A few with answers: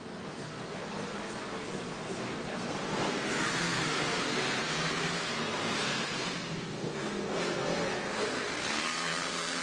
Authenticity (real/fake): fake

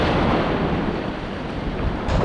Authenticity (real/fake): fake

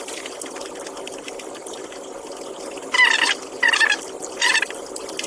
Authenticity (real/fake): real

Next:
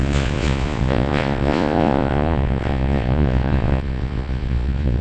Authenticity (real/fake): fake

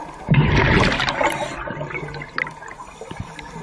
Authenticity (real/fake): real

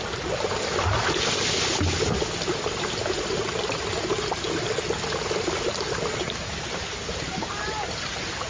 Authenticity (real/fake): real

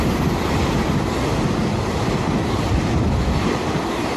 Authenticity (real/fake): fake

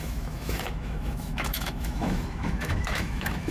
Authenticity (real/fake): fake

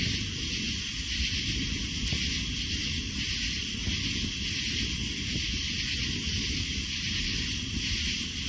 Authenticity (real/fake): real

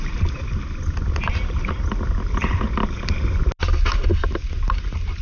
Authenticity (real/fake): real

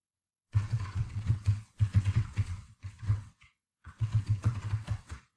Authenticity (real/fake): fake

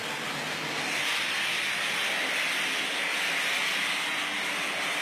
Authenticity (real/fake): real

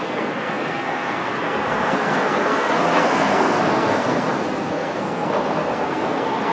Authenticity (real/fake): fake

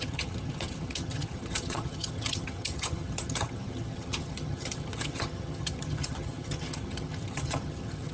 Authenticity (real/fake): fake